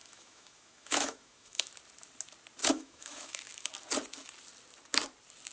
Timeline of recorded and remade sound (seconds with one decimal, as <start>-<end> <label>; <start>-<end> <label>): 0.0-1.7 remade; 1.7-2.6 recorded; 2.6-3.7 remade; 3.7-5.5 recorded